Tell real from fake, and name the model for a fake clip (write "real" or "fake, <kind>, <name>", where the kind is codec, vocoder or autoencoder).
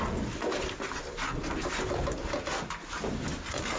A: real